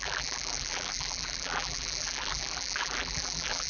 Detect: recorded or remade remade